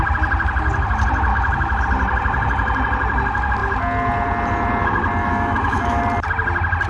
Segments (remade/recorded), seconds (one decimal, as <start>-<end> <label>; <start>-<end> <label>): 0.0-1.3 recorded; 1.3-1.8 remade; 1.8-5.2 recorded; 5.2-6.0 remade; 6.0-6.9 recorded